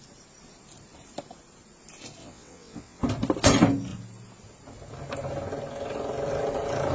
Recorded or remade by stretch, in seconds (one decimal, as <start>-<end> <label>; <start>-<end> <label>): 0.0-2.2 recorded; 2.2-3.0 remade; 3.0-6.9 recorded